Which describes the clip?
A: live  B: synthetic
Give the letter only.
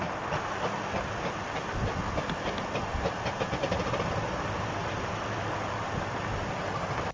A